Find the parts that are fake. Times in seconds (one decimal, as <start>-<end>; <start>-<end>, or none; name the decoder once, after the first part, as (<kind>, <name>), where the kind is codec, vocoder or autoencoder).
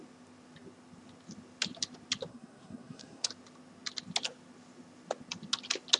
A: 2.3-3.3 (codec, SNAC)